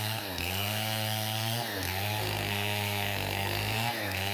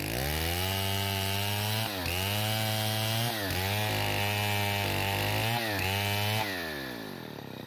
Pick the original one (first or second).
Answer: second